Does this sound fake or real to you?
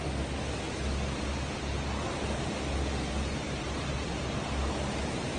real